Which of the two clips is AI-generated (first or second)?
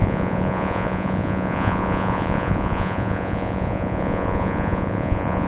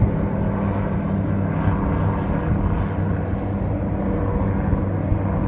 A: first